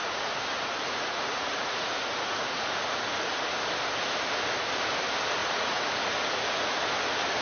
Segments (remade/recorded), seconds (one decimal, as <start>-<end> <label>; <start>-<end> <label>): 0.0-3.3 remade; 3.3-5.4 recorded; 5.4-6.8 remade; 6.8-7.4 recorded